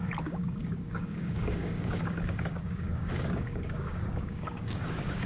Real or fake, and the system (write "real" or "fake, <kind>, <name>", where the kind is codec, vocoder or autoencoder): fake, codec, DAC